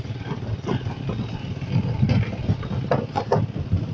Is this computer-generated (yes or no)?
no